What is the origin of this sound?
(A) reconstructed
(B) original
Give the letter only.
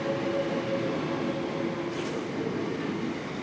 B